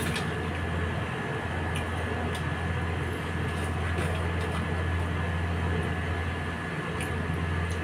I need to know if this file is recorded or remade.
recorded